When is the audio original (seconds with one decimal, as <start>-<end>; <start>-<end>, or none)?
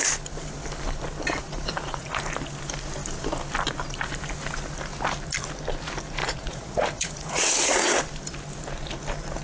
0.0-1.4; 2.2-6.2; 8.0-9.4